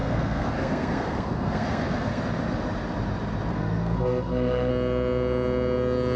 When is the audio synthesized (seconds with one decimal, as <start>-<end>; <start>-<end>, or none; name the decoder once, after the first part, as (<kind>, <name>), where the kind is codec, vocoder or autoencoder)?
0.0-2.2 (codec, SNAC); 3.5-4.7